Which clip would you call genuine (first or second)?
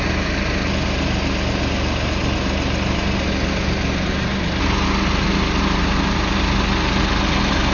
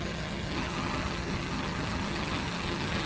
first